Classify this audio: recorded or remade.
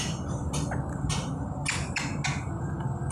recorded